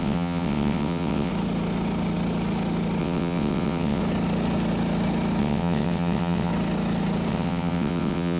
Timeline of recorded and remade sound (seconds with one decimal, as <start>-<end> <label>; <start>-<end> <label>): 0.0-1.3 remade; 1.3-3.0 recorded; 3.0-4.0 remade; 4.0-5.4 recorded; 5.4-6.5 remade; 6.5-7.3 recorded; 7.3-8.4 remade